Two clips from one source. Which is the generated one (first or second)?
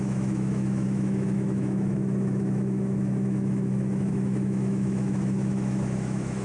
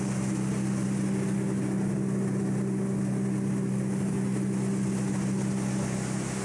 first